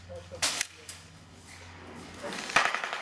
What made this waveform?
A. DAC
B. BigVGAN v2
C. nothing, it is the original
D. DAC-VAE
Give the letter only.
A